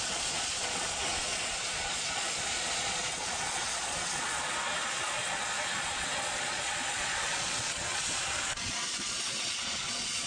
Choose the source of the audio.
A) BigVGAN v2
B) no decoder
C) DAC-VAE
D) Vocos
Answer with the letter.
D